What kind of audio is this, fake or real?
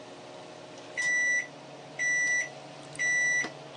real